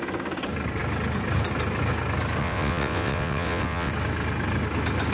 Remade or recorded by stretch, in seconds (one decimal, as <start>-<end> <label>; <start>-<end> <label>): 0.0-2.4 recorded; 2.4-3.9 remade; 3.9-5.1 recorded

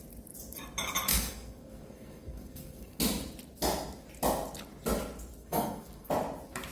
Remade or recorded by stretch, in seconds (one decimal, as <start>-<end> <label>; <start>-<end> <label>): 0.0-1.1 recorded; 1.1-3.0 remade; 3.0-5.4 recorded; 5.4-6.1 remade; 6.1-6.7 recorded

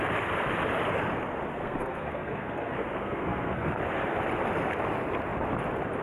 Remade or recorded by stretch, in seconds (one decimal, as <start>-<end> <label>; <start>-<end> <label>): 0.0-1.5 recorded; 1.5-3.8 remade; 3.8-6.0 recorded

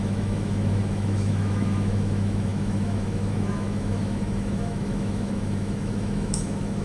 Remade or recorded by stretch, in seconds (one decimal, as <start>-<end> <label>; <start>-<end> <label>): 0.0-6.8 remade